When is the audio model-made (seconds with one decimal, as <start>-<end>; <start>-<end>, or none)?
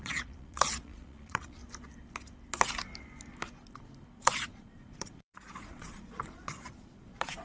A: 0.0-1.6; 4.2-7.4